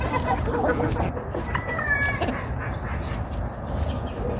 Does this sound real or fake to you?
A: real